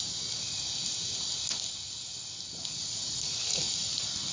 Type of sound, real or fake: real